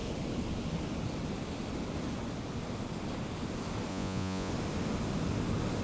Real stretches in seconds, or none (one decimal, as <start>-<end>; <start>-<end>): 0.0-3.9; 4.5-5.8